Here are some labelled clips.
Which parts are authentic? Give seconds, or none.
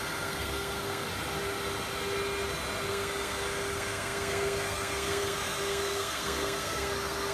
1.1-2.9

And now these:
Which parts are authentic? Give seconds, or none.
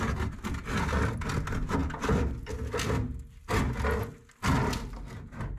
0.0-5.6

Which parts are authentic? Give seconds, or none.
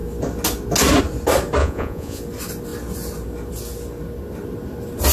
0.0-1.6; 2.2-5.1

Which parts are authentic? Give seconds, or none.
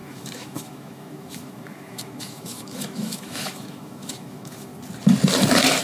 4.7-5.8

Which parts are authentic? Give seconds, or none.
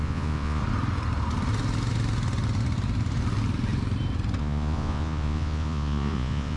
0.6-4.4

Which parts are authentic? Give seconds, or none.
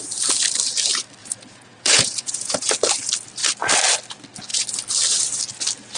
0.0-1.2; 2.7-6.0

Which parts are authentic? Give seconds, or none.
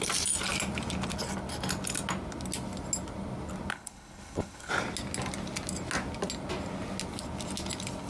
0.0-3.7; 4.7-8.1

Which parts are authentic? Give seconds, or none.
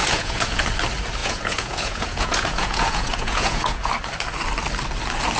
0.6-1.2; 3.9-5.4